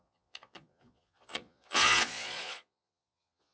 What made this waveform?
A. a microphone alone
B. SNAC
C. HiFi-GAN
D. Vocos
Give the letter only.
D